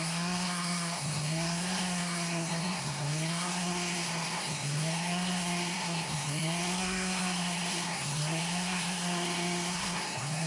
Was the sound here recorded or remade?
remade